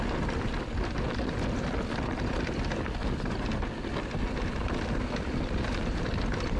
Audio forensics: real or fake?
real